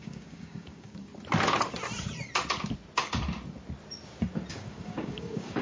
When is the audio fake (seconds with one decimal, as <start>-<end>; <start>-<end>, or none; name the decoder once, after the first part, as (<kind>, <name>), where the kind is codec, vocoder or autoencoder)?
0.0-1.1 (codec, DAC); 4.5-5.6